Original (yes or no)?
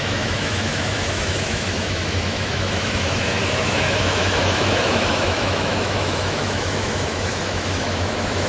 no